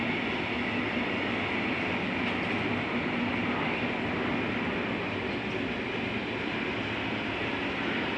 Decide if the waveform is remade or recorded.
recorded